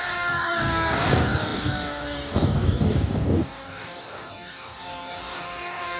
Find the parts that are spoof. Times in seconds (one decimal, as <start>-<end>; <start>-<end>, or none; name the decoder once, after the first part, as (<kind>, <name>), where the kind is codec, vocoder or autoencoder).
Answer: 0.0-6.0 (codec, DAC)